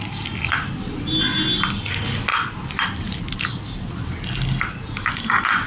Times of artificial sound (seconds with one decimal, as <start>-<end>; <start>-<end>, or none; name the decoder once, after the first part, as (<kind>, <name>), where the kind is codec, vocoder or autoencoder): 2.3-3.9 (vocoder, BigVGAN v2)